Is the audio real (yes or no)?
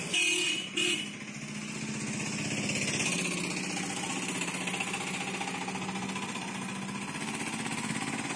yes